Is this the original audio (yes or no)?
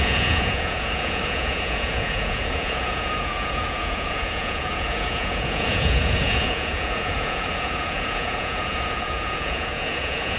no